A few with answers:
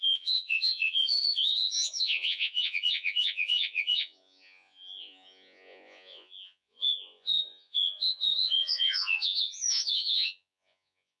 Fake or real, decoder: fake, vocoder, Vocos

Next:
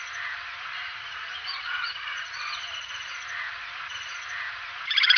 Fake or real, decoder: fake, vocoder, Vocos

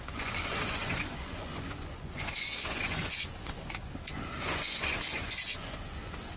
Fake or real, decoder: fake, vocoder, Vocos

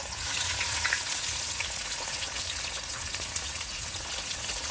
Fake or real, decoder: fake, vocoder, Vocos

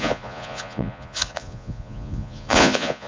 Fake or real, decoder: fake, vocoder, Vocos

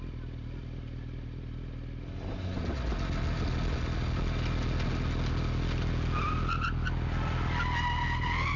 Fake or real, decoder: real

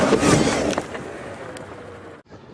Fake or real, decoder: real